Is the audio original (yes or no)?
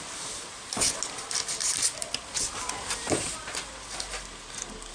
yes